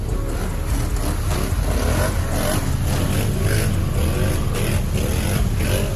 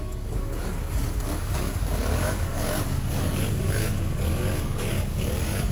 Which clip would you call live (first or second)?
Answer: first